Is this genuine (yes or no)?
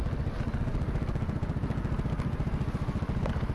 yes